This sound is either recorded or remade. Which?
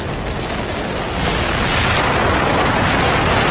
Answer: recorded